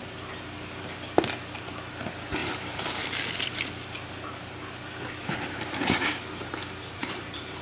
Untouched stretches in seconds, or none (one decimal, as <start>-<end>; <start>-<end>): 0.0-2.4; 3.0-7.0